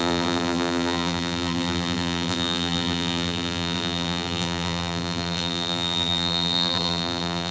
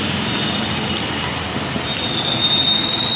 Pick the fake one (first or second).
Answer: first